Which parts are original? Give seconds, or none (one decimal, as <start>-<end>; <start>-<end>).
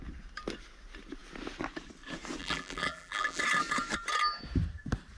0.0-2.4; 3.4-5.2